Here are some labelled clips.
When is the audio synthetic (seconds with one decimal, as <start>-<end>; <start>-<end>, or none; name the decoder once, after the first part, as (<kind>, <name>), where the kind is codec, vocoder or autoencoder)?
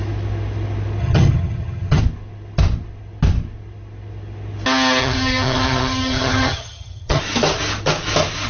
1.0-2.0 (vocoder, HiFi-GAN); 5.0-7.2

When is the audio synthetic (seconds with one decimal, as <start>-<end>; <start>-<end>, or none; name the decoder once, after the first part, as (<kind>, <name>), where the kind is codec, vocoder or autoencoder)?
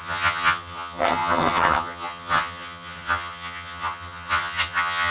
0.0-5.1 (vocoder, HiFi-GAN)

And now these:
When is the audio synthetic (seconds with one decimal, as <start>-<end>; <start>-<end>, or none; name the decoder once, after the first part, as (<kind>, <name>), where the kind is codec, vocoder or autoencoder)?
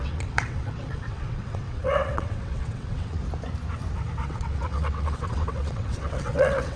0.0-3.2 (vocoder, WaveNeXt); 4.2-6.8